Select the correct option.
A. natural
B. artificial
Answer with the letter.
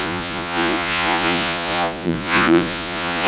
B